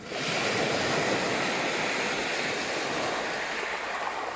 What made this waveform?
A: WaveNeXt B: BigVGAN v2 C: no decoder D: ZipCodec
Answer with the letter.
C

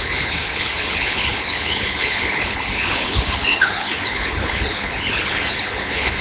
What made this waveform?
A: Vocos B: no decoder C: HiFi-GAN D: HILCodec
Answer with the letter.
D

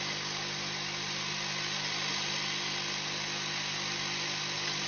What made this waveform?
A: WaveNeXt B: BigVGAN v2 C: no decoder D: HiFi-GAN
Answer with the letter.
C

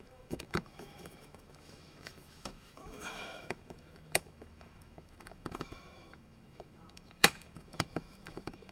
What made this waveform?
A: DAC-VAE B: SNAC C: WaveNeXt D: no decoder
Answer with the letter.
A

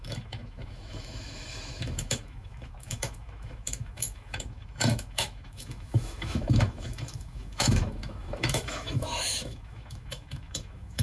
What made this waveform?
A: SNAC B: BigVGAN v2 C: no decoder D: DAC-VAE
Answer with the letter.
D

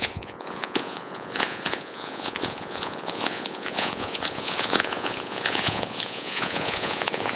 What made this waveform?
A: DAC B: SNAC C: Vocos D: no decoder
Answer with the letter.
C